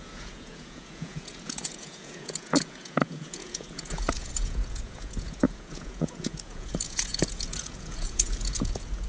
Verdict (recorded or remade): remade